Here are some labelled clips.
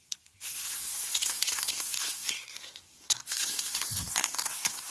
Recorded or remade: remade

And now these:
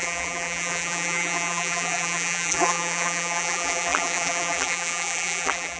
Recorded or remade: remade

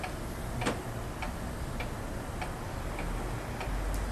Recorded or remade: recorded